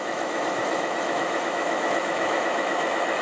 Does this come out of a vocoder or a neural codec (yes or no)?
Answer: yes